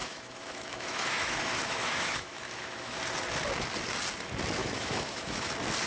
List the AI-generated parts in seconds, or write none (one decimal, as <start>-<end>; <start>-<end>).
0.0-3.0; 4.6-5.5